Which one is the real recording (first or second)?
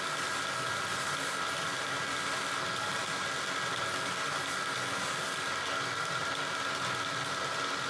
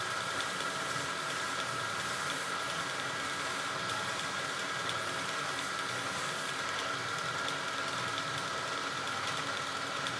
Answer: first